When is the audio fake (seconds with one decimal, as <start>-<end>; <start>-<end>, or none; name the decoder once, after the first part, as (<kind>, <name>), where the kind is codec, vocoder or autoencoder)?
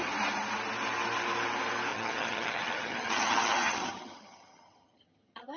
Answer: 1.9-5.6 (vocoder, HiFi-GAN)